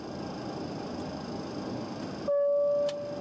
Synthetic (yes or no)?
no